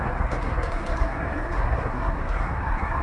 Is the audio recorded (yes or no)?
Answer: no